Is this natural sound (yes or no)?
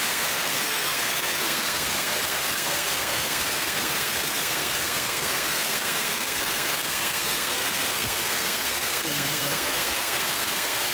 no